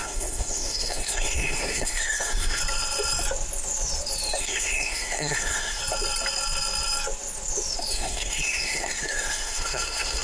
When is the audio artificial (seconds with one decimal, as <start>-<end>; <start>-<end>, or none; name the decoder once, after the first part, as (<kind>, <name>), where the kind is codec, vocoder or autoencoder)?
0.0-2.6 (codec, SNAC); 4.4-5.8; 7.9-10.2